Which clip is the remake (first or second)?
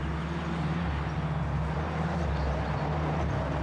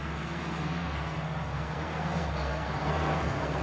second